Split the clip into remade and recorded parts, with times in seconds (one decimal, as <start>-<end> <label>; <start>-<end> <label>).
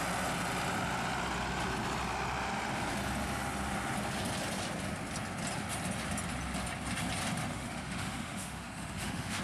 0.0-7.5 recorded; 7.5-9.4 remade